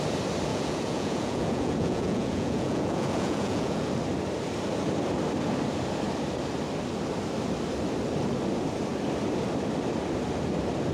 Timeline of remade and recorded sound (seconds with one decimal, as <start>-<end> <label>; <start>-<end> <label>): 0.0-0.5 recorded; 0.5-3.9 remade; 3.9-10.9 recorded